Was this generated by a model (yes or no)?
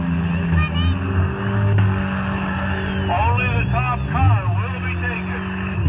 no